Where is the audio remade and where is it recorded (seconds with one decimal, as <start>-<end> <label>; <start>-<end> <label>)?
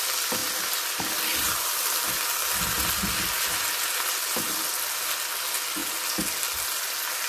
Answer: 0.0-7.3 recorded